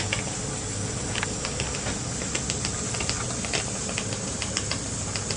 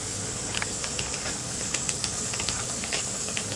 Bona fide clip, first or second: first